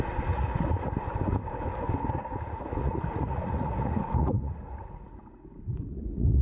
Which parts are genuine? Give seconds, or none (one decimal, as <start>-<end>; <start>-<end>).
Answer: 1.4-2.4